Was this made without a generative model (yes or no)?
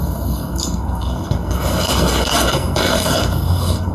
no